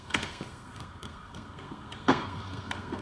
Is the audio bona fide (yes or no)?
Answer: no